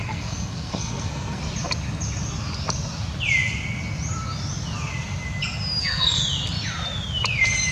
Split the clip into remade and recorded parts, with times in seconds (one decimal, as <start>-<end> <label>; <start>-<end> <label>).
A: 0.0-1.4 remade; 1.4-5.8 recorded; 5.8-6.2 remade; 6.2-7.7 recorded